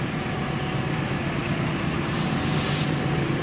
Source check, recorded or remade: recorded